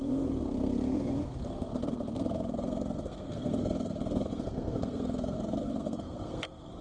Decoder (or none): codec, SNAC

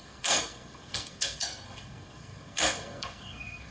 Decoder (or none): codec, SNAC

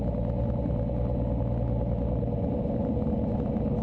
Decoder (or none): none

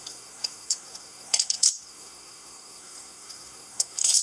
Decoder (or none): codec, SNAC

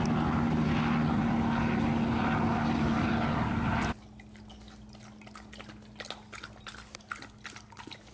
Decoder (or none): none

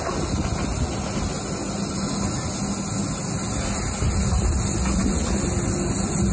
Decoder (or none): none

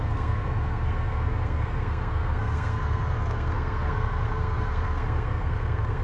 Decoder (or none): codec, SNAC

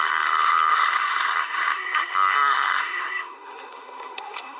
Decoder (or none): codec, SNAC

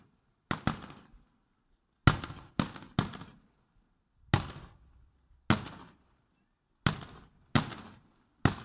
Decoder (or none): none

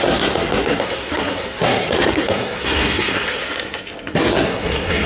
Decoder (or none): codec, SNAC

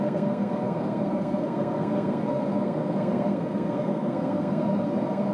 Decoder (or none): codec, SNAC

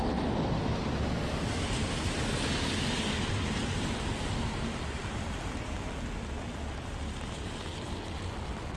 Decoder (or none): none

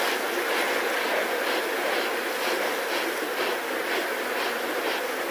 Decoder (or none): none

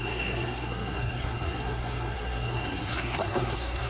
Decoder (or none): codec, SNAC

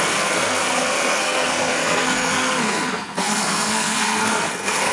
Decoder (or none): codec, SNAC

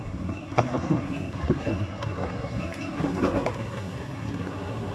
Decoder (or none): codec, SNAC